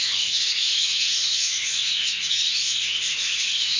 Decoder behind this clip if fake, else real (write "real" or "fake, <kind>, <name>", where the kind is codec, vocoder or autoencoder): fake, autoencoder, DAC-VAE